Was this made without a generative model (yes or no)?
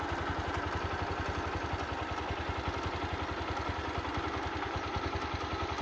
yes